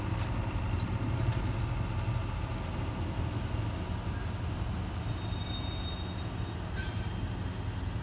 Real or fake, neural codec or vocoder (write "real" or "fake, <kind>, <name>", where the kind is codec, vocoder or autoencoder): real